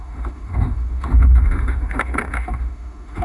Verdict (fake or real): fake